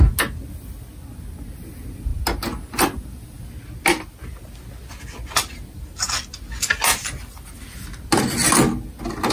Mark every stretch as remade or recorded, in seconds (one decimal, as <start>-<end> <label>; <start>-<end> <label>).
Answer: 0.0-9.3 recorded